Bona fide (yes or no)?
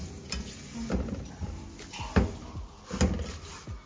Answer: yes